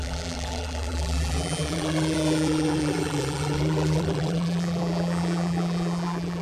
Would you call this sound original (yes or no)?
no